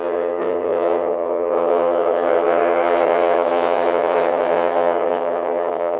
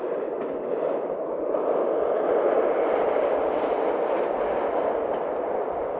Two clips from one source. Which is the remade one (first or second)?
first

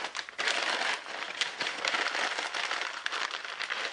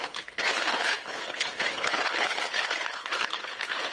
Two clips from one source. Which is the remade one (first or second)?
second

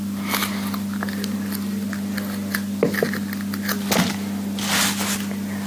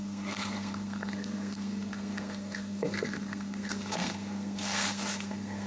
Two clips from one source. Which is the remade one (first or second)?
second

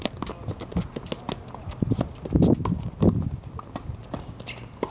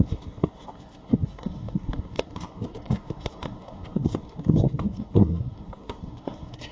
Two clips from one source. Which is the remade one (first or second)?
second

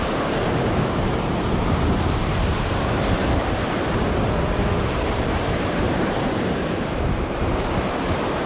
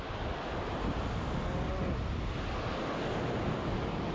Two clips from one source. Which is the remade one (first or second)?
first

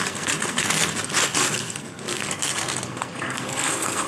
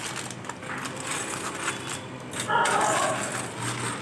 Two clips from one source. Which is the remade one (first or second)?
first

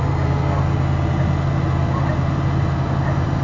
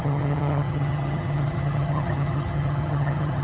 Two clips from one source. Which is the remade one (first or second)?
second